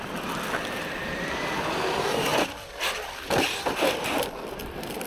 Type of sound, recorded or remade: remade